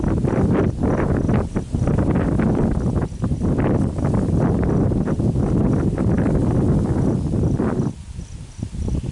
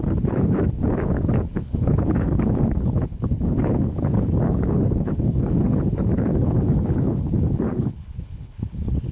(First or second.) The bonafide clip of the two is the first